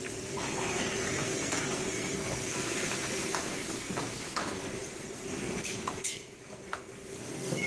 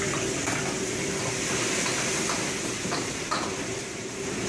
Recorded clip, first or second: second